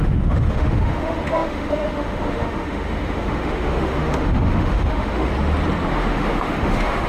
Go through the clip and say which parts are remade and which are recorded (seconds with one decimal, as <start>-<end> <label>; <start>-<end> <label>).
0.0-5.3 remade; 5.3-5.9 recorded; 5.9-7.1 remade